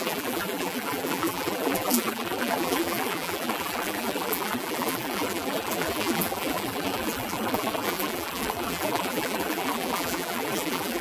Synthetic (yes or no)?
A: yes